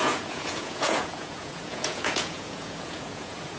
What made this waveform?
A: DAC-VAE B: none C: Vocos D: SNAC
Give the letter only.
C